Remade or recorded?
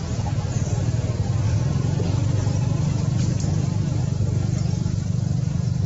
recorded